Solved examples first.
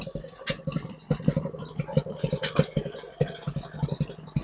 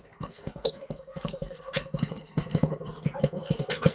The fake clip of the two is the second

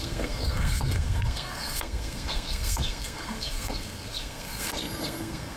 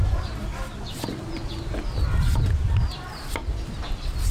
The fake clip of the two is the first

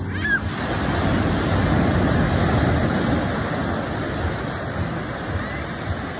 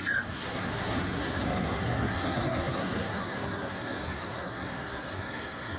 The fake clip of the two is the second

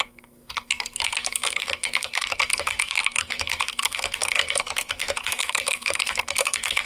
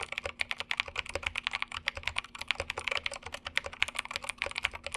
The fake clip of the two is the first